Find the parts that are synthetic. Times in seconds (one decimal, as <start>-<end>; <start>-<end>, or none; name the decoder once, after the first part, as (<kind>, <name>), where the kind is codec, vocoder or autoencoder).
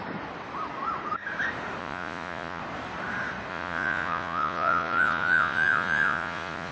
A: 1.8-2.6 (vocoder, Vocos); 3.5-6.7